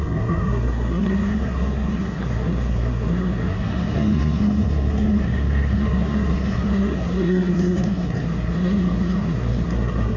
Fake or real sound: fake